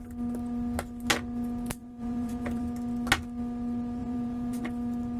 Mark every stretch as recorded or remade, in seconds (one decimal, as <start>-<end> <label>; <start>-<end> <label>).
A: 0.0-1.8 recorded; 1.8-2.6 remade; 2.6-4.0 recorded; 4.0-4.6 remade; 4.6-5.2 recorded